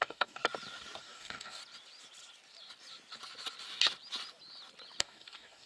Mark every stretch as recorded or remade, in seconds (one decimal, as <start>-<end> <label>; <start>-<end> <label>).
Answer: 0.0-0.4 remade; 0.4-1.0 recorded; 1.0-1.6 remade; 1.6-5.0 recorded; 5.0-5.7 remade